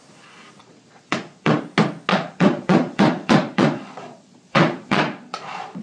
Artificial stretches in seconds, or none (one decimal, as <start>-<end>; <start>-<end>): 0.6-1.6; 2.1-5.8